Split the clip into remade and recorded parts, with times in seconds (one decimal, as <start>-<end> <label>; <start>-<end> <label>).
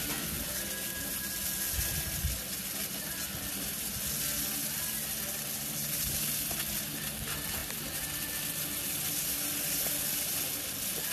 0.0-11.1 recorded